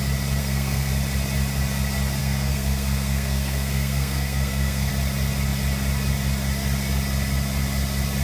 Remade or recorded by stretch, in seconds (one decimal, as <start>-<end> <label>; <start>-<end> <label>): 0.0-0.4 recorded; 0.4-0.9 remade; 0.9-2.2 recorded; 2.2-4.9 remade; 4.9-8.2 recorded